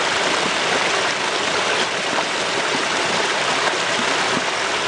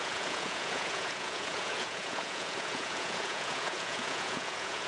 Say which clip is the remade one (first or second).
second